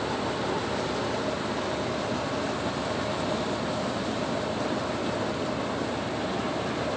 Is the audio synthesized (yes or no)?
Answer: no